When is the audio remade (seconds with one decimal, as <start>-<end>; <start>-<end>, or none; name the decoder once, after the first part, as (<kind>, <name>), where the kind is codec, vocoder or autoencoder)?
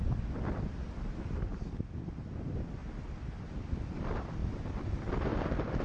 0.0-1.5 (vocoder, BigVGAN v2); 2.0-2.8; 3.4-4.4; 5.1-5.8